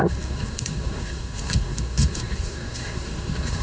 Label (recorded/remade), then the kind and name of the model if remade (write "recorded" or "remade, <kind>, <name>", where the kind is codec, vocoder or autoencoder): remade, codec, SNAC